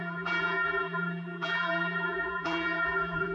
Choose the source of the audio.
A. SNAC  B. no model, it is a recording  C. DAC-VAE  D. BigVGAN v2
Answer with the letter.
D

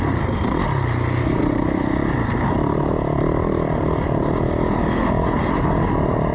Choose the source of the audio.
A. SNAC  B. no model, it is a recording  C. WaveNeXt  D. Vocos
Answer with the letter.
B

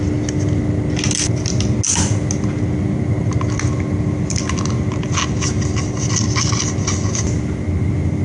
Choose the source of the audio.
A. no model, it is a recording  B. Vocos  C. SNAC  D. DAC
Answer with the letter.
A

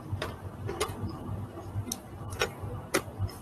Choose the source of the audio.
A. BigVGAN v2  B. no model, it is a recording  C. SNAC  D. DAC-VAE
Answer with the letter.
B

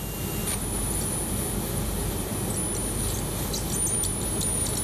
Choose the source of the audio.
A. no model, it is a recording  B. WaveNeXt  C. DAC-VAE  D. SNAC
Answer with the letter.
A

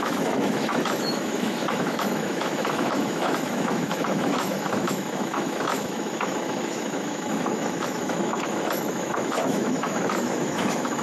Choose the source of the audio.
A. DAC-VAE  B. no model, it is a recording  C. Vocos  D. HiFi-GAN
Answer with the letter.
A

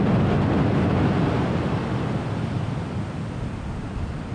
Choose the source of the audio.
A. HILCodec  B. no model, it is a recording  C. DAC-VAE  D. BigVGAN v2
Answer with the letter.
B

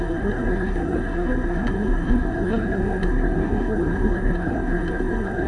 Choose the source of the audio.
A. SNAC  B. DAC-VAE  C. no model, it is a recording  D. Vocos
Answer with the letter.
A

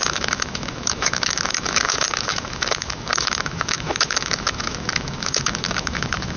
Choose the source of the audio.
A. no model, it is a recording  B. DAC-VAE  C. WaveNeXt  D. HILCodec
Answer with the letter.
B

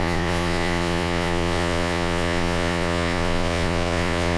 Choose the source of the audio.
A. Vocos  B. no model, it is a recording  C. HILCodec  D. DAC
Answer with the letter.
A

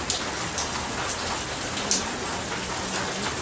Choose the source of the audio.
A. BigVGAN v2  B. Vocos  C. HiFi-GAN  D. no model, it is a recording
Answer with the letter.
D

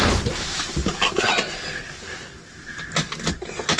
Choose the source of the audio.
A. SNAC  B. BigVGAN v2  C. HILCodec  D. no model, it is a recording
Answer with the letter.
D